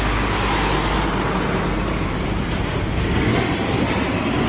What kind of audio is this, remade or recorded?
recorded